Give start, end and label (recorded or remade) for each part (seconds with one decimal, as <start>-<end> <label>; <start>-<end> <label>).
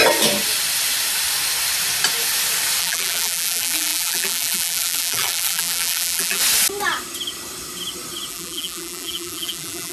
0.0-2.8 recorded; 2.8-6.4 remade; 6.4-8.3 recorded; 8.3-9.9 remade